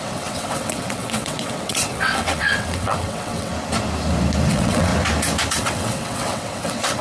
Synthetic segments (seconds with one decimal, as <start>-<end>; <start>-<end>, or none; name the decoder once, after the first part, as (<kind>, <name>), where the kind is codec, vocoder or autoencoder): 0.0-3.5 (vocoder, WaveNeXt); 4.5-4.9; 5.5-7.0